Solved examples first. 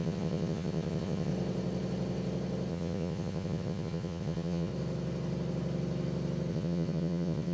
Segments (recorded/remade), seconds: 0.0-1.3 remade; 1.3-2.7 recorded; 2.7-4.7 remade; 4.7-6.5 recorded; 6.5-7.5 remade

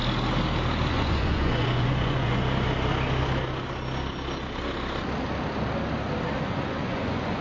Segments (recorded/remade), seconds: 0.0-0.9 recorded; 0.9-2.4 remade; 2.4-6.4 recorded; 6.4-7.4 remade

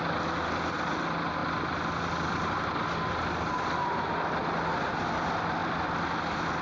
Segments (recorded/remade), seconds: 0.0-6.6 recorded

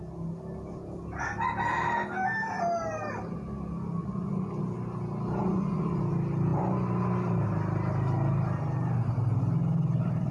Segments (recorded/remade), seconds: 0.0-4.0 recorded; 4.0-4.6 remade; 4.6-5.4 recorded; 5.4-6.0 remade; 6.0-10.3 recorded

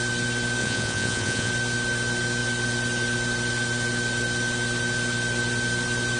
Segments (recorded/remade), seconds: 0.0-0.6 recorded; 0.6-1.5 remade; 1.5-6.2 recorded